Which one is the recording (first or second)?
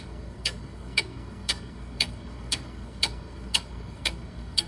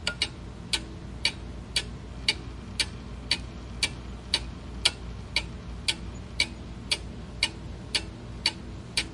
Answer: second